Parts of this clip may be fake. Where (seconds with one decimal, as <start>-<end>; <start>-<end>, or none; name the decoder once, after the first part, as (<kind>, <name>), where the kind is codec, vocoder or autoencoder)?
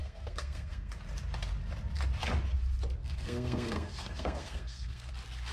0.0-0.9 (codec, SNAC); 3.0-5.1